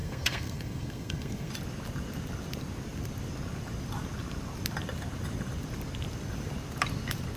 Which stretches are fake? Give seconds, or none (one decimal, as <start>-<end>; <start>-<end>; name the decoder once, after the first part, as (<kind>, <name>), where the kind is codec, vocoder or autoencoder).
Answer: 0.0-1.5 (codec, SNAC)